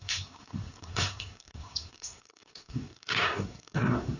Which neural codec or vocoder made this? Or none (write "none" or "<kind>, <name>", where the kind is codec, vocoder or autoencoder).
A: codec, SNAC